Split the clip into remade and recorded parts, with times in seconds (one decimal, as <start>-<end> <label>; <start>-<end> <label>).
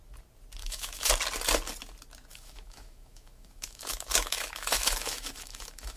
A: 0.0-0.6 recorded; 0.6-1.1 remade; 1.1-2.3 recorded; 2.3-6.0 remade